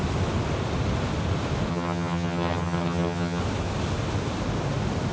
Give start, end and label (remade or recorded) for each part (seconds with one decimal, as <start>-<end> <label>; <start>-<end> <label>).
0.0-1.7 recorded; 1.7-3.4 remade; 3.4-5.1 recorded